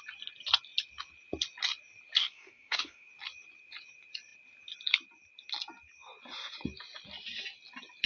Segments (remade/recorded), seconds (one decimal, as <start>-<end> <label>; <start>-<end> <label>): 0.0-2.2 recorded; 2.2-3.1 remade; 3.1-8.1 recorded